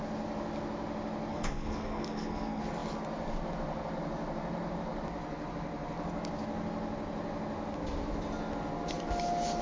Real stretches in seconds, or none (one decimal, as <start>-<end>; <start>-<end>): 0.0-1.3; 2.6-9.6